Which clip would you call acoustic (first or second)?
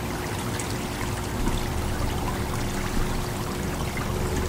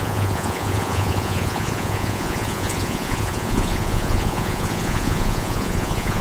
first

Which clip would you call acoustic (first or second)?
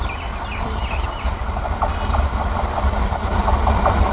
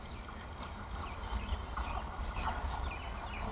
second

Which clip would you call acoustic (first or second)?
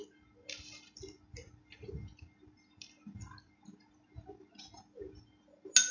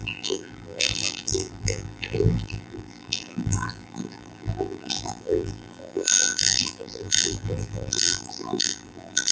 first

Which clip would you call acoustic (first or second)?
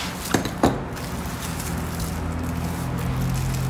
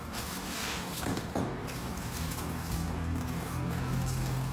first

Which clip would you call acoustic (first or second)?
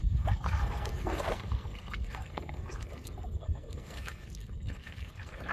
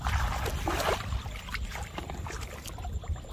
second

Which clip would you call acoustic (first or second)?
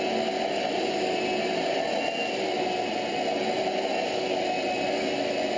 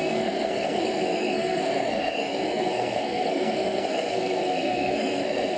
first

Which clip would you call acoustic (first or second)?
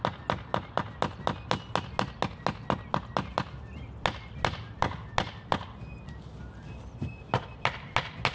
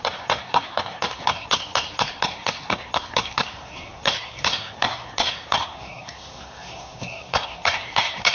first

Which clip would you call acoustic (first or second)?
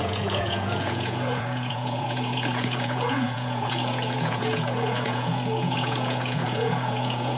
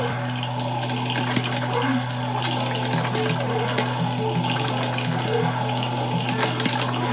second